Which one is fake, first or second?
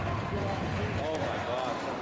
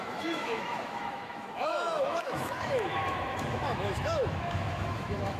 second